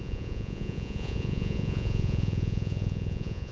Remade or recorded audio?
remade